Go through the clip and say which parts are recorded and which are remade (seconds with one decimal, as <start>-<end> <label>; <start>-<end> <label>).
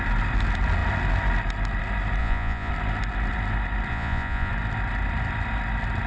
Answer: 0.0-2.2 recorded; 2.2-2.7 remade; 2.7-3.9 recorded; 3.9-4.5 remade; 4.5-6.1 recorded